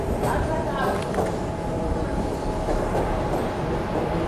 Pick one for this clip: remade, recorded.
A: recorded